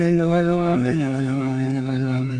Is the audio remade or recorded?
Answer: remade